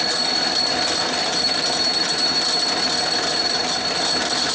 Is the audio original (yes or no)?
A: yes